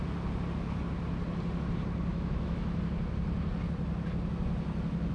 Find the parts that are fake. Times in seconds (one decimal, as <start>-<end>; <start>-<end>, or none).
2.1-2.8